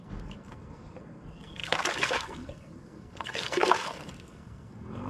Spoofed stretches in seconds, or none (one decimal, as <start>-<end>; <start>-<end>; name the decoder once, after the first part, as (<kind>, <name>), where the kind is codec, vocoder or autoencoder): 0.0-5.1 (codec, SNAC)